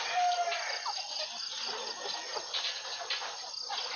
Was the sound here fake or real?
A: real